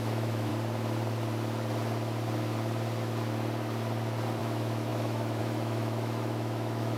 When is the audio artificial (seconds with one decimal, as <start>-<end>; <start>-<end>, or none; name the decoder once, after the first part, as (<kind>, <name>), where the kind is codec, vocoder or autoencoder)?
0.0-0.5 (autoencoder, DAC-VAE); 4.4-7.0